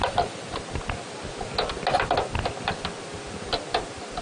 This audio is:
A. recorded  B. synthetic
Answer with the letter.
A